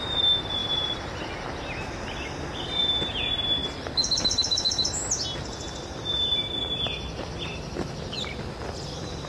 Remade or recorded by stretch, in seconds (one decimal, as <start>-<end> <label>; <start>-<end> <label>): 0.0-9.3 recorded